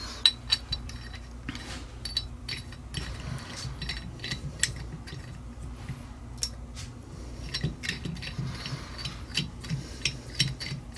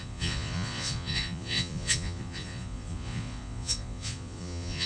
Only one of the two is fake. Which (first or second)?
second